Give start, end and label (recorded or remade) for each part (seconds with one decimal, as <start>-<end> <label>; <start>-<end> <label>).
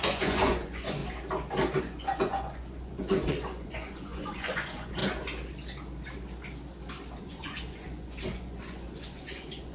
0.0-1.0 remade; 1.0-1.8 recorded; 1.8-5.0 remade; 5.0-7.2 recorded; 7.2-9.7 remade